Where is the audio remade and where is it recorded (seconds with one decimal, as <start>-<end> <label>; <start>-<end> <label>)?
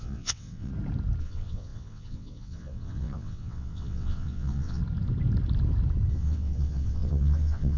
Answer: 0.0-0.7 remade; 0.7-1.2 recorded; 1.2-4.8 remade; 4.8-6.1 recorded; 6.1-7.8 remade